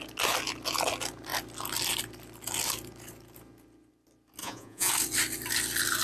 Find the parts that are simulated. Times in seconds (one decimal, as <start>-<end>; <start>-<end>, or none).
4.4-4.9